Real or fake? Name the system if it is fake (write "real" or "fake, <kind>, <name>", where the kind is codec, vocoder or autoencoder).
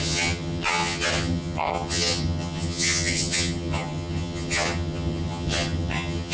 fake, vocoder, HiFi-GAN